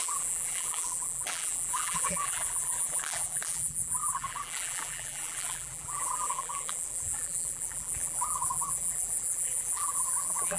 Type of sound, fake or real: fake